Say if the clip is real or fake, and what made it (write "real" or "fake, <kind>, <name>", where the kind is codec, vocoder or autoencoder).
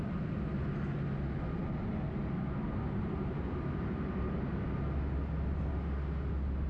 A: real